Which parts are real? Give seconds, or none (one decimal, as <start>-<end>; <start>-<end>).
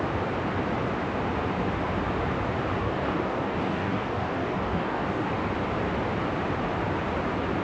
0.0-2.8; 5.3-7.6